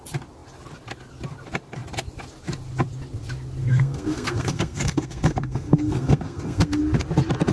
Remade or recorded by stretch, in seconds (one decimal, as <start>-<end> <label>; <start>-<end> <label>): 0.0-3.6 recorded; 3.6-6.8 remade; 6.8-7.5 recorded